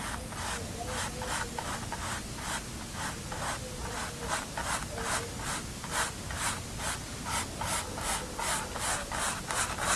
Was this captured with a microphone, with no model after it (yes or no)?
yes